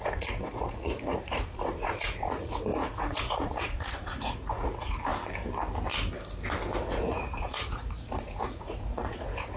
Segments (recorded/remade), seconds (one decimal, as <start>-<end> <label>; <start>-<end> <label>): 0.0-5.1 remade; 5.1-6.8 recorded; 6.8-9.6 remade